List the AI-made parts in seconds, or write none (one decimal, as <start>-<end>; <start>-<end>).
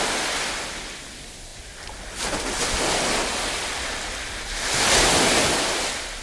none